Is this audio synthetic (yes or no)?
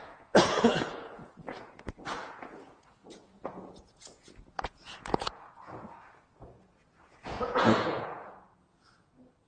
yes